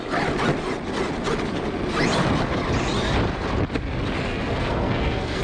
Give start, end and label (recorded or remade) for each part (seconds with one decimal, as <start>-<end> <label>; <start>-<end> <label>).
0.0-4.3 recorded; 4.3-5.4 remade